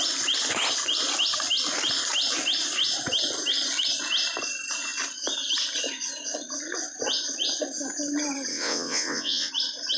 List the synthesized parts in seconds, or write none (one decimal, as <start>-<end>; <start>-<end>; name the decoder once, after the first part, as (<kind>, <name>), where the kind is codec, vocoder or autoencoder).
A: 8.5-9.5 (vocoder, WaveNeXt)